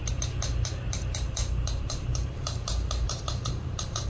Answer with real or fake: fake